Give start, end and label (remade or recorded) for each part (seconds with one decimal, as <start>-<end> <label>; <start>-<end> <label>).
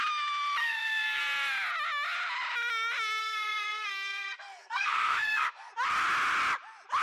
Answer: 0.0-0.6 recorded; 0.6-1.2 remade; 1.2-3.2 recorded; 3.2-5.7 remade; 5.7-7.0 recorded